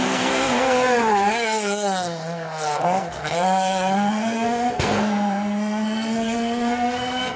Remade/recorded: remade